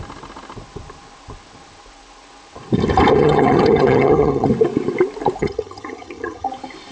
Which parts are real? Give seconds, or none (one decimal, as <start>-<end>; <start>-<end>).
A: 0.0-3.1; 4.5-5.4; 6.5-6.9